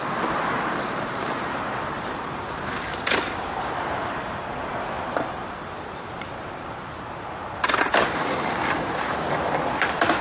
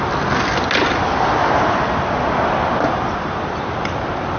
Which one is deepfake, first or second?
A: first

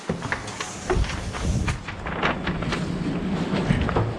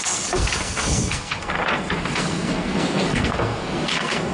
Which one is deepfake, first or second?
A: second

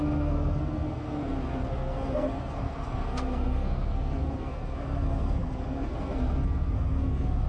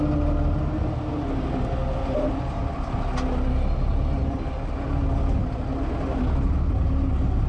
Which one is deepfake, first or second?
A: first